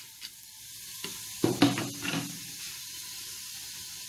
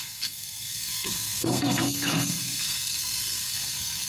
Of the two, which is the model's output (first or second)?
second